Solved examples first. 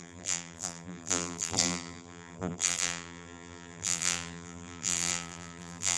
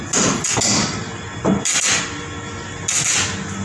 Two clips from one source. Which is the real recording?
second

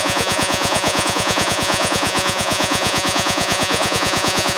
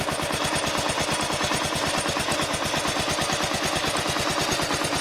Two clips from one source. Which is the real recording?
second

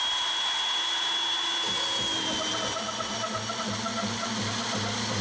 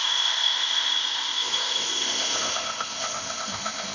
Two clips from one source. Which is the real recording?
first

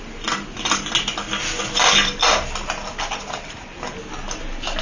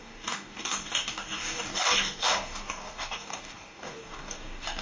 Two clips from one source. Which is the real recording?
first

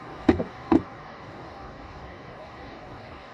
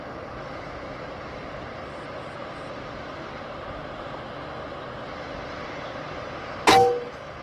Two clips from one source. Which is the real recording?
second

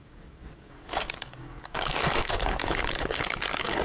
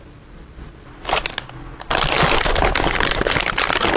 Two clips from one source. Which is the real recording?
second